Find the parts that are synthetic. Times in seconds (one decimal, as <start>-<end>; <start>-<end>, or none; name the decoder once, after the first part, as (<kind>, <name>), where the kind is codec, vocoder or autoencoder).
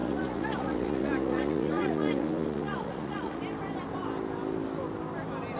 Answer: 0.0-3.4 (vocoder, Vocos)